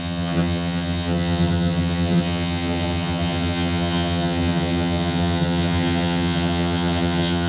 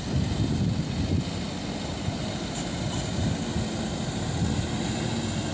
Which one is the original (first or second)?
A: second